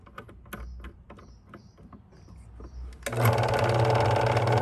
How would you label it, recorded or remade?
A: recorded